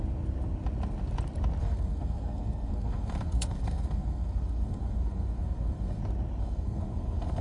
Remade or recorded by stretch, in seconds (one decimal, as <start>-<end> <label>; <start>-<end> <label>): 0.0-1.6 recorded; 1.6-6.0 remade; 6.0-6.4 recorded; 6.4-7.4 remade